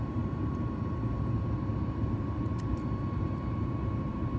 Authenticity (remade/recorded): remade